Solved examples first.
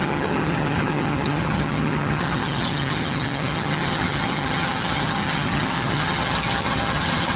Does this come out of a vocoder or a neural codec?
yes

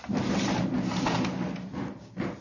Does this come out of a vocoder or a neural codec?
no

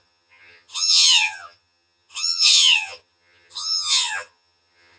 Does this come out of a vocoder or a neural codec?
yes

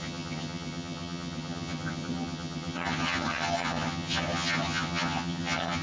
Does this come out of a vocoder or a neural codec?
yes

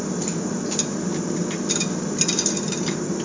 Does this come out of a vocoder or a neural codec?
no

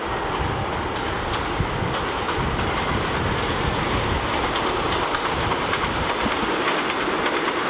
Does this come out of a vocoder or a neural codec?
no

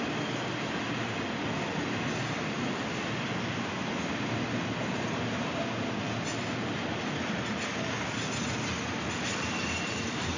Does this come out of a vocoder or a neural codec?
no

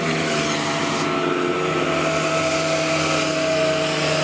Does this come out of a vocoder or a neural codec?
no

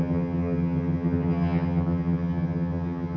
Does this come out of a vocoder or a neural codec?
yes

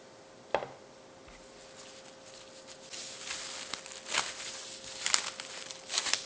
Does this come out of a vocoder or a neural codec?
no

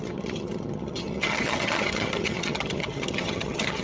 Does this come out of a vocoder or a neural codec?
yes